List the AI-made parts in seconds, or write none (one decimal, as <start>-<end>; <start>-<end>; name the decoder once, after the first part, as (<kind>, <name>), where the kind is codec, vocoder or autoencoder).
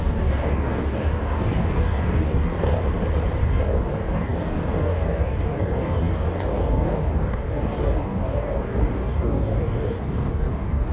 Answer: 0.0-2.8 (codec, DAC); 3.4-10.9